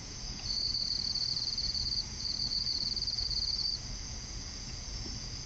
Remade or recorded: remade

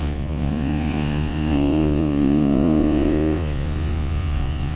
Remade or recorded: remade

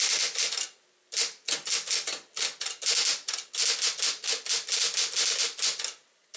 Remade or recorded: recorded